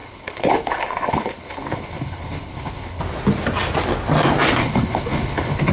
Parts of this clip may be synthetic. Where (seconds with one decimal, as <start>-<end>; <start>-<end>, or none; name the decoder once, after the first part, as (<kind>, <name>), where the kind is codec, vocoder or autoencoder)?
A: 0.0-3.0 (codec, HILCodec); 4.6-5.7